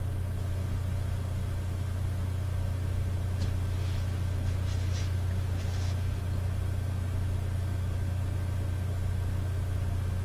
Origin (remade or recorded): recorded